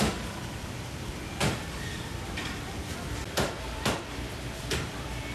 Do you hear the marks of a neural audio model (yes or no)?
yes